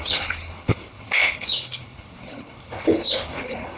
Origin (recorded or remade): remade